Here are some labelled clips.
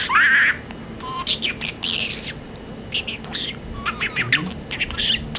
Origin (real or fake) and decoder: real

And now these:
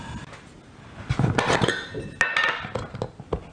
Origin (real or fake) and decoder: real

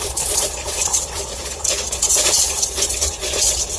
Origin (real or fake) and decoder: fake, vocoder, Vocos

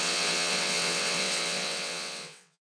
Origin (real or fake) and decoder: fake, vocoder, WaveNeXt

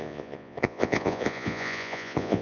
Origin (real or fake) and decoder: fake, vocoder, Vocos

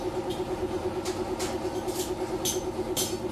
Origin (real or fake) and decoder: real